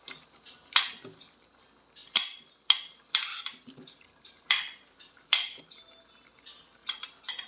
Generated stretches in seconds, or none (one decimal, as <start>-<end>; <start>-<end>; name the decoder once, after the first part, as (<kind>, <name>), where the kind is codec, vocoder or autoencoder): 3.3-5.6 (vocoder, BigVGAN v2); 6.8-7.5